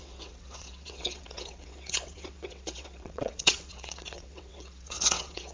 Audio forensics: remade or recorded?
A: remade